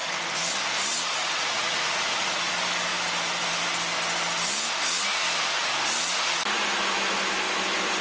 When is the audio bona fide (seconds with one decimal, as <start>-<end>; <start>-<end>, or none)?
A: 0.5-1.2; 2.5-8.0